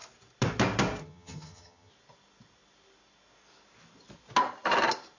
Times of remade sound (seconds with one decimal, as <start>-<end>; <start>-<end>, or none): 1.0-1.9